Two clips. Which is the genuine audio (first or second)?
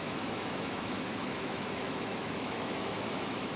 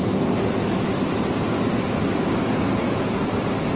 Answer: second